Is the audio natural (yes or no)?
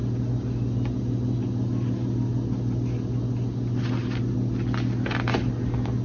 yes